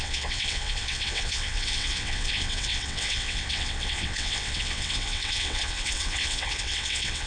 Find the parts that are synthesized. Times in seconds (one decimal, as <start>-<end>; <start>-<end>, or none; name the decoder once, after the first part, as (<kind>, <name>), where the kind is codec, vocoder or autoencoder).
0.0-7.3 (vocoder, WaveNeXt)